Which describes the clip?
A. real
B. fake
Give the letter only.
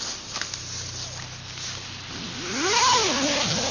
A